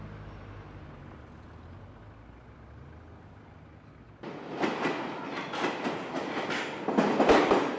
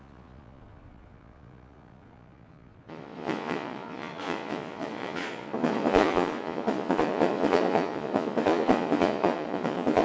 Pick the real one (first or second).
first